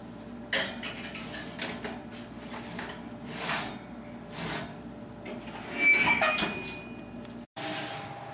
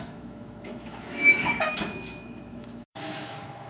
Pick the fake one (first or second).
second